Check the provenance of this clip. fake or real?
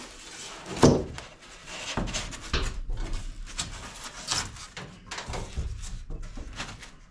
real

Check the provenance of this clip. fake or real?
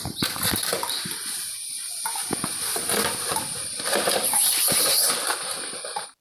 real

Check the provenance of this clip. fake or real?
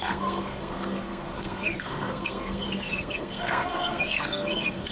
fake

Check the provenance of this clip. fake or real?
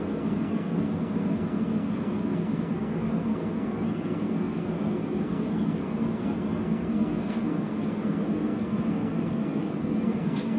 fake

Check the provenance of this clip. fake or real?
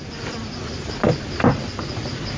real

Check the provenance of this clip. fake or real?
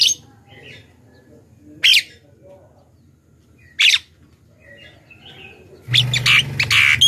real